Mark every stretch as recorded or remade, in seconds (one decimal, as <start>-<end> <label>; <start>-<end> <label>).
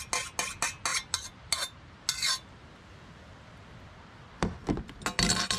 0.0-5.6 recorded